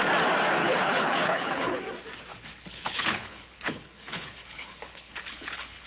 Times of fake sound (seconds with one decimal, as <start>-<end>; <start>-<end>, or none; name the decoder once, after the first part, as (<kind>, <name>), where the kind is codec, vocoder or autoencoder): 0.6-1.8 (codec, HILCodec); 2.3-5.9